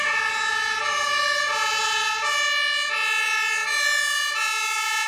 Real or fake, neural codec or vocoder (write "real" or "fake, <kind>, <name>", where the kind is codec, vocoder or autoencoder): real